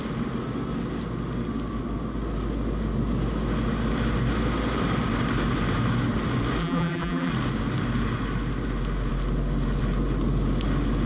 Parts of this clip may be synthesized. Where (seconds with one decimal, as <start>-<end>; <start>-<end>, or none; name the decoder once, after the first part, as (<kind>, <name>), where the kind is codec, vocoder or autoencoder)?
6.6-7.3 (vocoder, BigVGAN v2)